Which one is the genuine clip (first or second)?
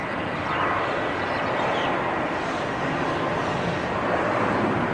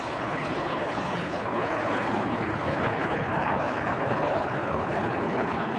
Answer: first